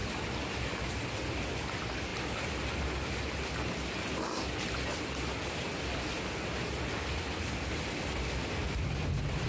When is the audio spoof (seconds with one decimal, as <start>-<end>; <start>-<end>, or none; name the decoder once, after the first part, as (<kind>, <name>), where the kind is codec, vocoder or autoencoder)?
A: none